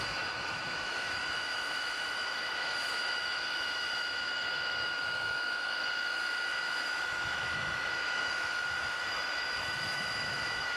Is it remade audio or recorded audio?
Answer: remade